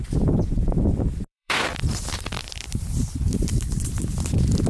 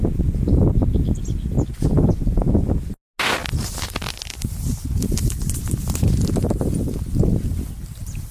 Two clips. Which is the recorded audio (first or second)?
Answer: second